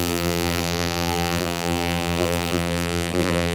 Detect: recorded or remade remade